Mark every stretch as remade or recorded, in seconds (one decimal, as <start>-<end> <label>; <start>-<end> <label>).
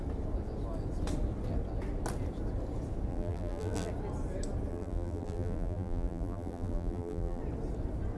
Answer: 0.0-3.1 recorded; 3.1-3.9 remade; 3.9-4.7 recorded; 4.7-7.4 remade; 7.4-8.2 recorded